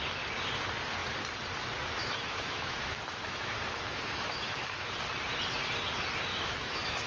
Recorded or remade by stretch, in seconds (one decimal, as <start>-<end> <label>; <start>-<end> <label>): 0.0-2.0 recorded; 2.0-4.9 remade; 4.9-6.3 recorded; 6.3-7.1 remade